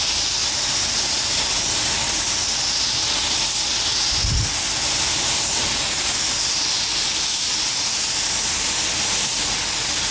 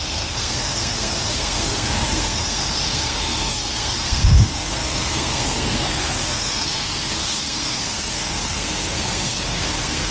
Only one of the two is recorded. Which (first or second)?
first